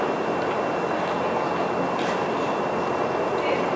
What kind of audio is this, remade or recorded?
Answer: recorded